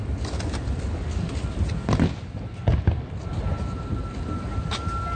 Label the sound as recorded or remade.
recorded